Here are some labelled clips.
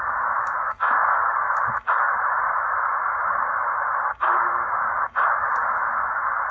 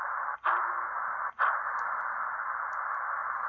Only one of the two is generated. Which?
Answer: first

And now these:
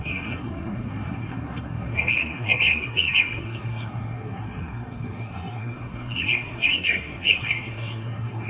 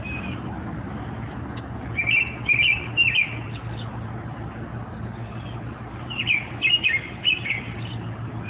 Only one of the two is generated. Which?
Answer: first